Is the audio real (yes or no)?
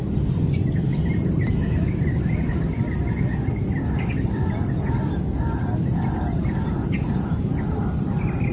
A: yes